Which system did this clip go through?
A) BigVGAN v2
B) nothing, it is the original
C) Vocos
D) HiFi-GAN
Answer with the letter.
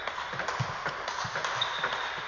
B